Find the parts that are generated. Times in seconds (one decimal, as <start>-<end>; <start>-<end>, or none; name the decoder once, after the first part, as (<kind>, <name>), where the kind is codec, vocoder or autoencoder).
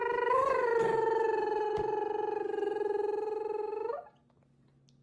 none